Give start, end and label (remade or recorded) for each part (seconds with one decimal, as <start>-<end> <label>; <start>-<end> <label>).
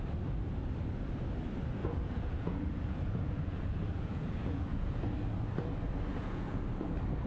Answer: 0.0-1.8 recorded; 1.8-5.1 remade; 5.1-6.1 recorded; 6.1-6.6 remade; 6.6-7.3 recorded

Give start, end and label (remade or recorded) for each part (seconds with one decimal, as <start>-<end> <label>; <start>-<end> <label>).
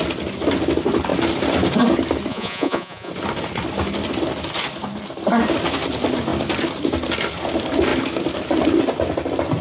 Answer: 0.0-2.3 recorded; 2.3-3.1 remade; 3.1-9.6 recorded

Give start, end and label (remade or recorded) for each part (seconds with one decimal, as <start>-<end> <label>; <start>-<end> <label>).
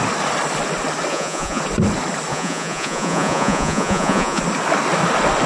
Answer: 0.0-1.1 recorded; 1.1-1.6 remade; 1.6-2.3 recorded; 2.3-4.4 remade; 4.4-5.5 recorded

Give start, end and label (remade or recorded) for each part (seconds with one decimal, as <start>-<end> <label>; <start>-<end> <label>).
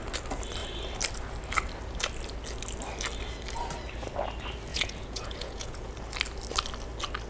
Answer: 0.0-4.7 recorded; 4.7-5.9 remade; 5.9-7.3 recorded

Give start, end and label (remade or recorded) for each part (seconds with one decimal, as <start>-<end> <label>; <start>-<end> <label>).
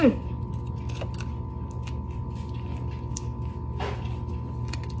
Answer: 0.0-5.0 recorded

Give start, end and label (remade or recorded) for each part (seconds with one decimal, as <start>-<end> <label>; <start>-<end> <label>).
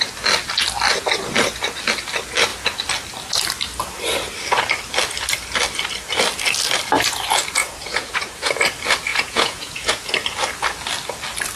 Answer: 0.0-7.6 recorded; 7.6-8.5 remade; 8.5-9.1 recorded; 9.1-10.1 remade; 10.1-11.6 recorded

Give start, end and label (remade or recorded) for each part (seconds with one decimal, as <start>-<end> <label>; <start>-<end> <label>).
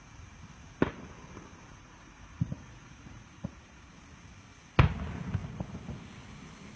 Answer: 0.0-1.7 recorded; 1.7-3.9 remade; 3.9-6.8 recorded